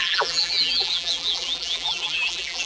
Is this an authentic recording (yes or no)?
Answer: no